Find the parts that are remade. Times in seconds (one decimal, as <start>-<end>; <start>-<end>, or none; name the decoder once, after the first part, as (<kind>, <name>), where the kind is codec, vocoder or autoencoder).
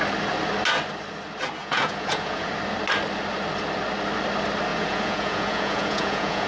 1.6-2.5 (vocoder, Vocos); 4.7-6.5